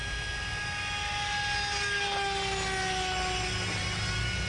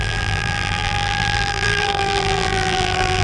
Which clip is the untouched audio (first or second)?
first